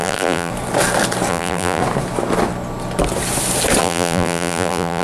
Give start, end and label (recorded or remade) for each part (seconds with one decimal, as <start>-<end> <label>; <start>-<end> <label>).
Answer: 0.0-0.5 remade; 0.5-1.3 recorded; 1.3-1.8 remade; 1.8-3.8 recorded; 3.8-5.0 remade